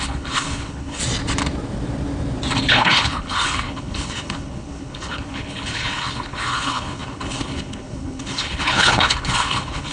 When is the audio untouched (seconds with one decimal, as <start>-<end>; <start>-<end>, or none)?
1.0-2.7